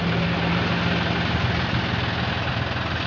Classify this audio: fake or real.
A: real